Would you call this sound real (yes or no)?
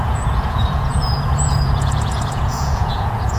no